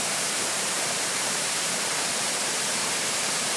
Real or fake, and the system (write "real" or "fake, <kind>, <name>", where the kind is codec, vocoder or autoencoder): fake, vocoder, BigVGAN v2